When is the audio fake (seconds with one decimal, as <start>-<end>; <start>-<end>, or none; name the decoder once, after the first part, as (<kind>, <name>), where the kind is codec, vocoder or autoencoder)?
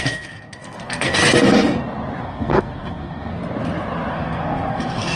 0.0-1.2 (codec, SNAC); 2.2-3.4; 4.1-5.2